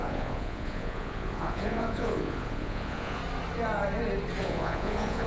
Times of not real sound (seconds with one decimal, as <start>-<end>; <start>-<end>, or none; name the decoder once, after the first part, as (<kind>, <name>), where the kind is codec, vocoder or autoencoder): 0.0-3.2 (vocoder, Vocos); 4.4-5.3